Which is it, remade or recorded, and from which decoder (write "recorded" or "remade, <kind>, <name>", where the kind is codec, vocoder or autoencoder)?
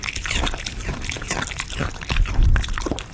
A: recorded